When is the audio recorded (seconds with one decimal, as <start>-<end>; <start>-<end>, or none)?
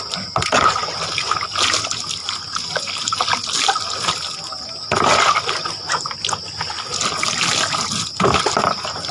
0.0-9.1